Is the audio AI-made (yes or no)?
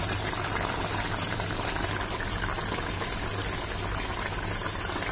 no